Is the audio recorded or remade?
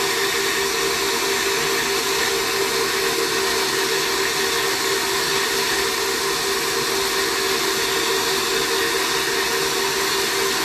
recorded